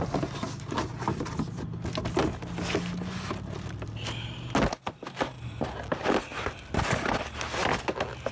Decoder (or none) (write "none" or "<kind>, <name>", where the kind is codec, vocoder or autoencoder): none